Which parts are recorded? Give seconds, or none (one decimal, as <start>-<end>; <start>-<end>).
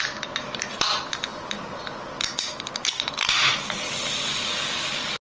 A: 0.0-5.2